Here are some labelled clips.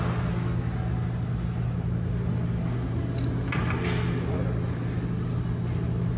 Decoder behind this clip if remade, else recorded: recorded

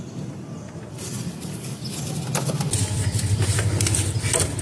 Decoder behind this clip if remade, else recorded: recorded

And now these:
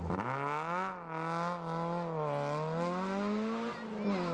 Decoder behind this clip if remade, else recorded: recorded